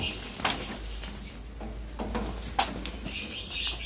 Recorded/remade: recorded